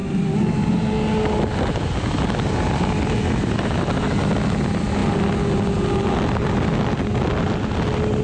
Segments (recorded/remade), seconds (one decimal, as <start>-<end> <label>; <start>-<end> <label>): 0.0-8.2 recorded